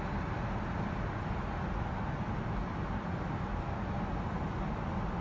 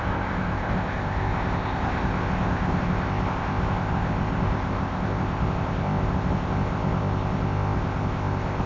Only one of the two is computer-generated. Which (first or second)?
second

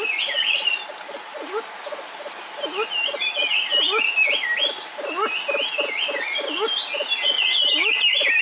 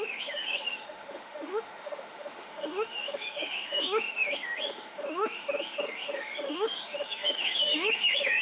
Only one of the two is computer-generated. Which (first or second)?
second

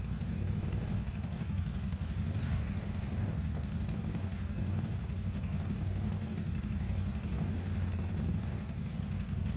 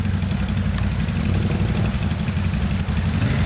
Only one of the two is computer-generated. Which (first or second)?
first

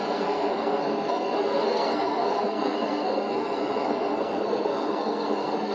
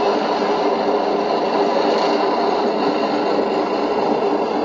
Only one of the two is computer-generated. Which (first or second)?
first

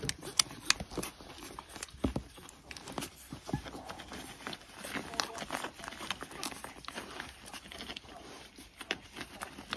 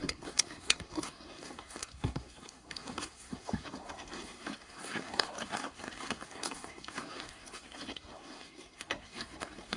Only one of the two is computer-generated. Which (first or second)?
second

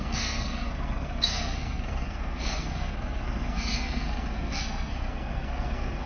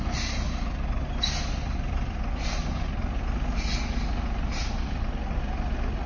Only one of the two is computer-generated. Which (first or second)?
first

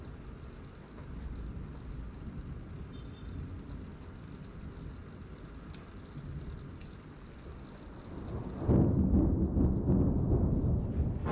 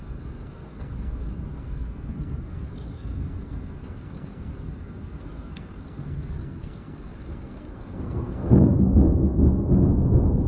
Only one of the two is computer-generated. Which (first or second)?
second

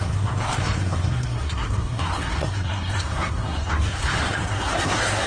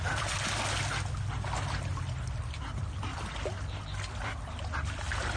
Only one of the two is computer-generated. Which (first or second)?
first